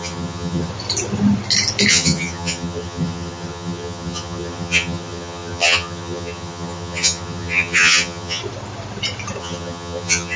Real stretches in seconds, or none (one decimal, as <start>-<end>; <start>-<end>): 0.7-1.9; 8.4-9.4